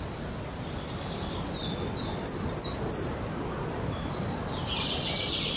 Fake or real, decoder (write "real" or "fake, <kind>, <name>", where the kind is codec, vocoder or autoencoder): real